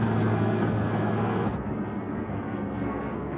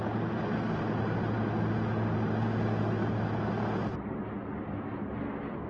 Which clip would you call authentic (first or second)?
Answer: second